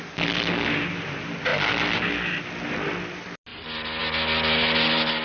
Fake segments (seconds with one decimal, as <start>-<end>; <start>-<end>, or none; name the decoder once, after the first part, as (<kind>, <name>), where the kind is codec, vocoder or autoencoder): 3.5-4.0 (vocoder, BigVGAN v2)